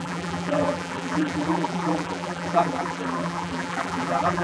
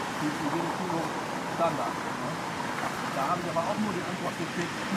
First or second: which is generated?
first